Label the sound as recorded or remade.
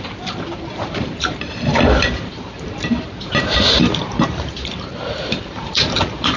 remade